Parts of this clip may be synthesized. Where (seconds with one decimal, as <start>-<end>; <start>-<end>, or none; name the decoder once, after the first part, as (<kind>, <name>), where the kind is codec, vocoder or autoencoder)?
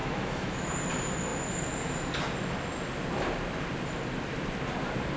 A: 0.0-0.7 (autoencoder, DAC-VAE)